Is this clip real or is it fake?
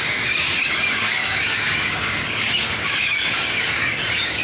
fake